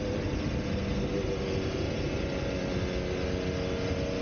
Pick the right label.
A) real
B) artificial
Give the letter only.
A